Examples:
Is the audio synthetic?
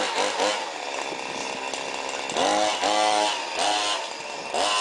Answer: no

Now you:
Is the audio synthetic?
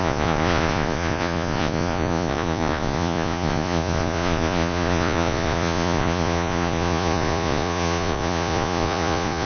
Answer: yes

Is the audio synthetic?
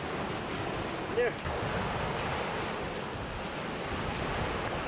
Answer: no